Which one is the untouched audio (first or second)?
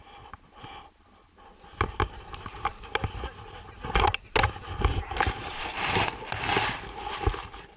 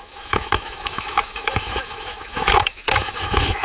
first